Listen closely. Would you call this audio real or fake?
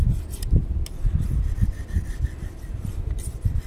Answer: real